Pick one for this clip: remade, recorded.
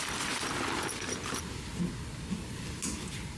recorded